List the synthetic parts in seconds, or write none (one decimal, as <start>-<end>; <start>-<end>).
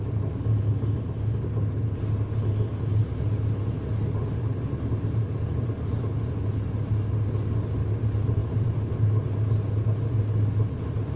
none